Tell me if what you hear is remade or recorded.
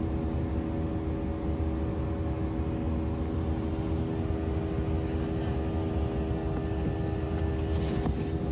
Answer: recorded